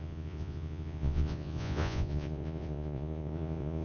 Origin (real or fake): fake